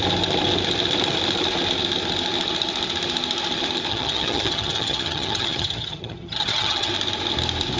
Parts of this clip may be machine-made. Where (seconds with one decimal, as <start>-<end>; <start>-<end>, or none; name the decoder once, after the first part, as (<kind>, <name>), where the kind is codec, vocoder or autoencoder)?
3.9-6.9 (vocoder, HiFi-GAN)

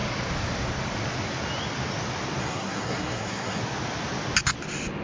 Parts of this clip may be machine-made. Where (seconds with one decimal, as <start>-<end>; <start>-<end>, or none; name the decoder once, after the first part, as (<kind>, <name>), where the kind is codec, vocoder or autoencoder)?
2.4-3.6 (codec, SNAC)